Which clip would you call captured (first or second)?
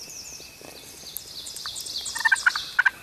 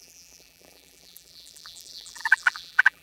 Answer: first